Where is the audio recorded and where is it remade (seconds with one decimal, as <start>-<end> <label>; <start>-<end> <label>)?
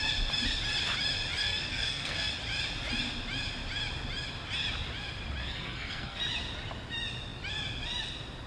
0.0-1.4 recorded; 1.4-2.3 remade; 2.3-5.4 recorded; 5.4-6.2 remade; 6.2-8.5 recorded